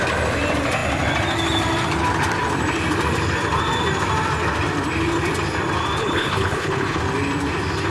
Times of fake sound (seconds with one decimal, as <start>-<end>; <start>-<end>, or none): 6.0-7.0